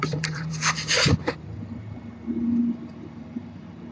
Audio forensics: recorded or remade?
remade